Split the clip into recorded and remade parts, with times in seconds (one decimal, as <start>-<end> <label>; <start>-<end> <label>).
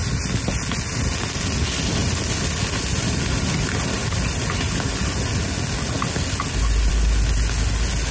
0.0-8.1 recorded